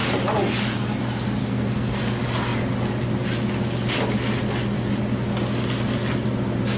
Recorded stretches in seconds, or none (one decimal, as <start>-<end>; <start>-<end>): 0.0-1.4; 2.0-6.8